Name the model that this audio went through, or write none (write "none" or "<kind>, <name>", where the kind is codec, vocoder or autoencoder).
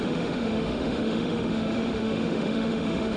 autoencoder, DAC-VAE